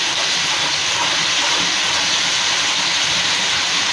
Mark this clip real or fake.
fake